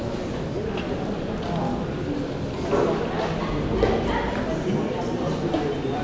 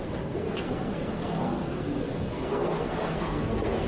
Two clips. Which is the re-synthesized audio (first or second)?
second